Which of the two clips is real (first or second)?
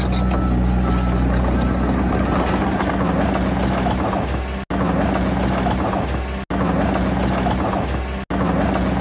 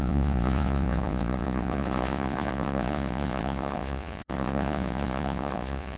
first